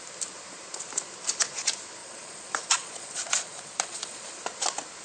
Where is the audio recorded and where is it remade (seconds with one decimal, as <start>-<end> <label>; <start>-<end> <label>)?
0.0-2.0 recorded; 2.0-4.3 remade; 4.3-5.0 recorded